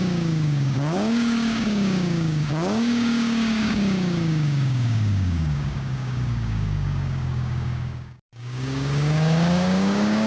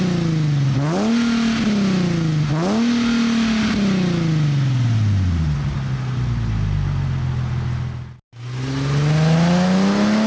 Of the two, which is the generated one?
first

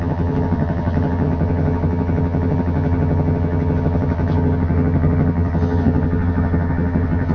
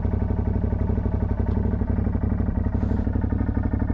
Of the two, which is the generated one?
first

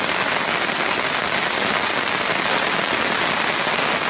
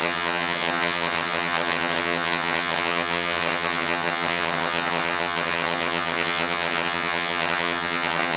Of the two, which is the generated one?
second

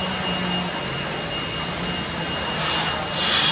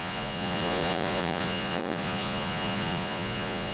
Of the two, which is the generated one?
second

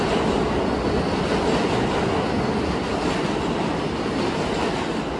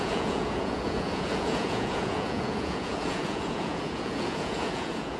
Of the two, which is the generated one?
second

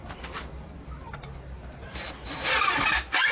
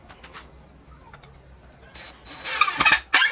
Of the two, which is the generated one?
first